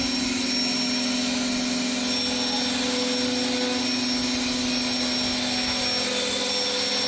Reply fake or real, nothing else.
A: real